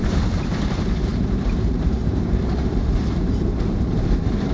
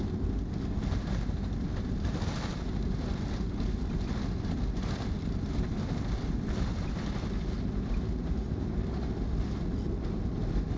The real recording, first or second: second